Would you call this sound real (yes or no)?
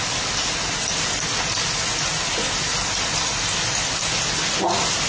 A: yes